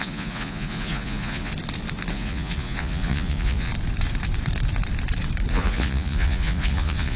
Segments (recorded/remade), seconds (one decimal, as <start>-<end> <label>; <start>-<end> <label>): 0.0-1.5 remade; 1.5-2.1 recorded; 2.1-3.7 remade; 3.7-5.5 recorded; 5.5-7.2 remade